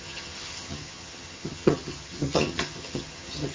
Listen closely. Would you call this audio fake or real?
fake